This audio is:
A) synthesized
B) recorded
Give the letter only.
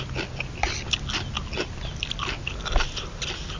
B